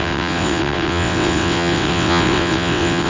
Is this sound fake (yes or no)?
yes